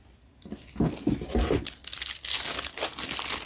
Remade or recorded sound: recorded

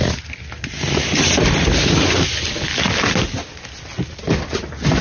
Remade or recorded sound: recorded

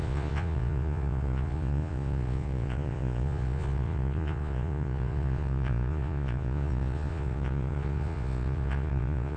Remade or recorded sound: remade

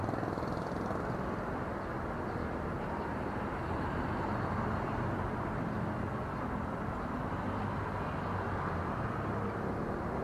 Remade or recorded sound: recorded